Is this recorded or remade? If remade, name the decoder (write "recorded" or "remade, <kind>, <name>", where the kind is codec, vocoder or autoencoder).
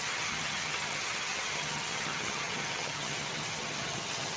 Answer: remade, vocoder, HiFi-GAN